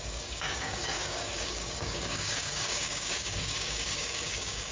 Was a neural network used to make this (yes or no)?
yes